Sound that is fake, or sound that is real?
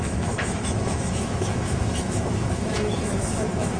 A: fake